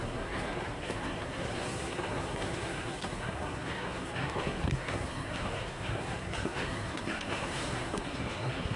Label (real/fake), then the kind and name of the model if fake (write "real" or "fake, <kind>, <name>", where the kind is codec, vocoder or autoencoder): fake, codec, SNAC